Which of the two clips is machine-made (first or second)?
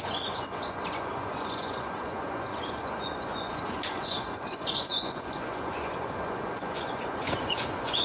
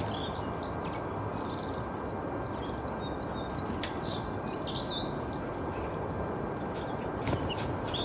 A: first